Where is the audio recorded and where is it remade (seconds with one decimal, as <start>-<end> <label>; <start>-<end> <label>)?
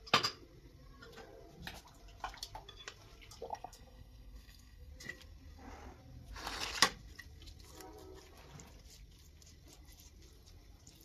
0.0-3.5 recorded; 3.5-4.9 remade; 4.9-11.0 recorded